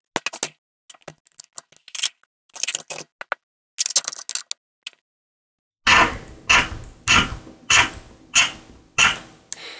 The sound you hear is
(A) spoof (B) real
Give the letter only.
B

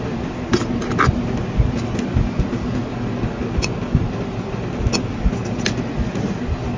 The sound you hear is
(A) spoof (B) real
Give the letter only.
B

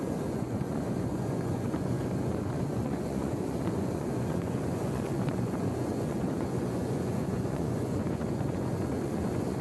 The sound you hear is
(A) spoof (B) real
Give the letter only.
A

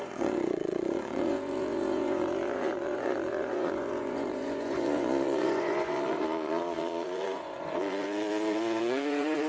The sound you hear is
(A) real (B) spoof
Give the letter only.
B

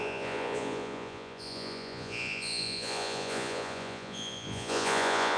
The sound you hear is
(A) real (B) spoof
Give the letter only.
B